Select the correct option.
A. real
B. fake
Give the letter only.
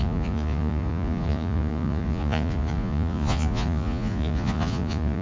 B